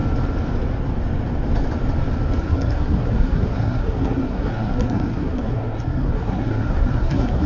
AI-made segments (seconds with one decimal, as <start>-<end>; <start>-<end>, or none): 2.4-7.5